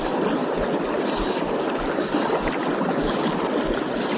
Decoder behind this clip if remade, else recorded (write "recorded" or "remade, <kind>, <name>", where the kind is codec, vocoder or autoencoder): recorded